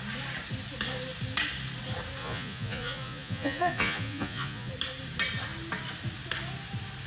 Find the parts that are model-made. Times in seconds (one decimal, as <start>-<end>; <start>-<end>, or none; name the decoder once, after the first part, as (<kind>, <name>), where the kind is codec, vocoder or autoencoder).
2.2-4.7 (vocoder, Vocos)